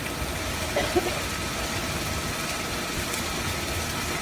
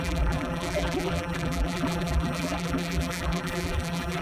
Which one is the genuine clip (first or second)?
first